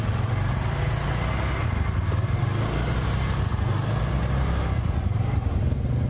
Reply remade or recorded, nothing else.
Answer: recorded